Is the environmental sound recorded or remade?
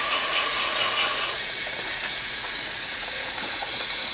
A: remade